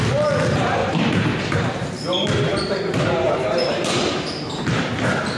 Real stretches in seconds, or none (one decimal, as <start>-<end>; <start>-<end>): 0.0-0.8; 1.9-2.5; 4.7-5.4